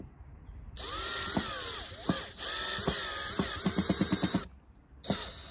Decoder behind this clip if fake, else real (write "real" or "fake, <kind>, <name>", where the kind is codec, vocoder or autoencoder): real